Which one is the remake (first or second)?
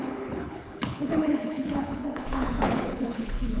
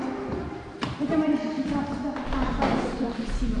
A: first